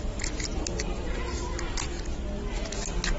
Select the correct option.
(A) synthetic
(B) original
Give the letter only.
B